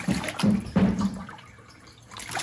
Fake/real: fake